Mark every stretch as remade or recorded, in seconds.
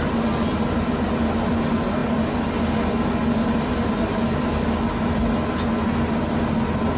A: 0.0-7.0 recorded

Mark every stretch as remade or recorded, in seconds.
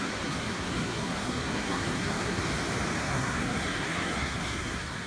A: 0.0-2.4 remade; 2.4-3.0 recorded; 3.0-5.1 remade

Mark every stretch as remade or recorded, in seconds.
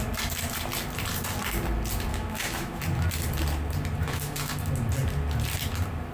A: 0.0-2.1 recorded; 2.1-2.8 remade; 2.8-4.0 recorded; 4.0-4.5 remade; 4.5-6.1 recorded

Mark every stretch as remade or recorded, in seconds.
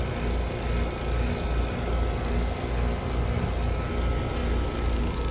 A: 0.0-5.3 recorded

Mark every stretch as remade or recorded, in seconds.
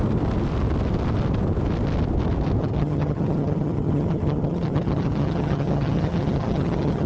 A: 0.0-2.6 recorded; 2.6-7.1 remade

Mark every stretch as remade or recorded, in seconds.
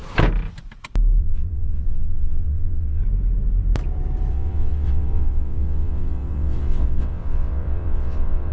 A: 0.0-1.2 recorded; 1.2-3.0 remade; 3.0-4.3 recorded; 4.3-8.5 remade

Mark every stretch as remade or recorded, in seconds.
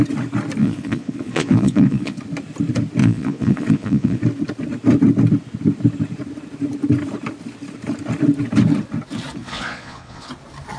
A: 0.0-0.6 recorded; 0.6-2.2 remade; 2.2-3.0 recorded; 3.0-4.2 remade; 4.2-9.4 recorded; 9.4-10.3 remade; 10.3-10.8 recorded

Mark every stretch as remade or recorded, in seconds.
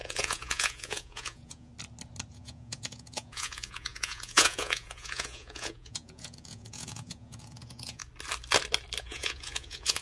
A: 0.0-1.7 remade; 1.7-2.3 recorded; 2.3-8.0 remade; 8.0-9.0 recorded; 9.0-10.0 remade